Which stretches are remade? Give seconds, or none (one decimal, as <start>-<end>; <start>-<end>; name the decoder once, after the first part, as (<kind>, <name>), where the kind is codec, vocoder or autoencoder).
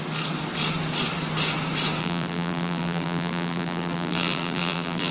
2.0-5.1 (vocoder, BigVGAN v2)